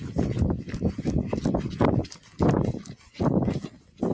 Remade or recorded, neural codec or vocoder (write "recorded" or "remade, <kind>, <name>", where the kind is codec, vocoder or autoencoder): recorded